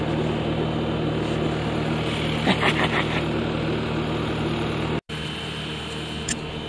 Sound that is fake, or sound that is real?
real